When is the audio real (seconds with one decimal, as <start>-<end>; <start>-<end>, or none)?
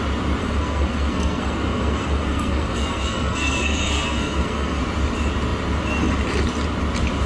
0.0-0.4; 4.8-7.3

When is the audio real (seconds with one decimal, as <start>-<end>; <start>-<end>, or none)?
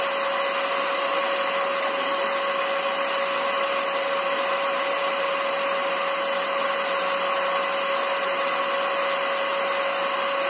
0.0-10.5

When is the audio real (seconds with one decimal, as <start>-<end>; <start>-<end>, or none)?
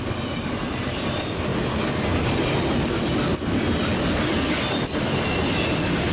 0.0-6.1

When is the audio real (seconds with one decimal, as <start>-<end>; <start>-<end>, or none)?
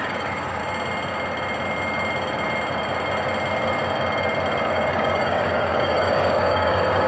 0.6-4.6